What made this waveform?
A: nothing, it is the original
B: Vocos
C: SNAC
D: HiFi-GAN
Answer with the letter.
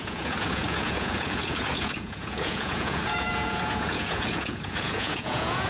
B